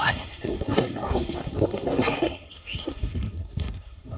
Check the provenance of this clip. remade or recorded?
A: remade